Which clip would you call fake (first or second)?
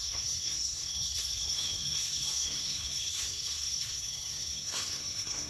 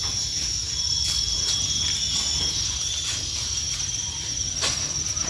first